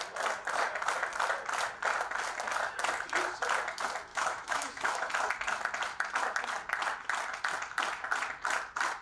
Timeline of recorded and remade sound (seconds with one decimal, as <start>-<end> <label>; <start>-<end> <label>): 0.0-4.1 recorded; 4.1-5.1 remade; 5.1-9.0 recorded

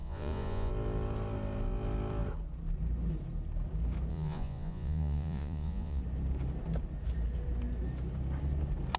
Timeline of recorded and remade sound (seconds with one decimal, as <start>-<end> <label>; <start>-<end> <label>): 0.0-0.7 remade; 0.7-4.1 recorded; 4.1-6.0 remade; 6.0-9.0 recorded

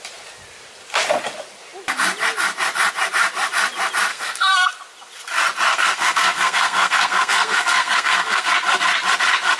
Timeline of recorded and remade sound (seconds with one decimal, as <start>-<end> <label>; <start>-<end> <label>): 0.0-4.1 recorded; 4.1-4.7 remade; 4.7-5.7 recorded; 5.7-8.5 remade; 8.5-9.6 recorded

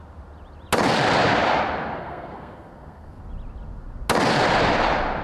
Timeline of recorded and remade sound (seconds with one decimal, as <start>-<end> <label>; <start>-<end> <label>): 0.0-2.0 recorded; 2.0-3.2 remade; 3.2-5.2 recorded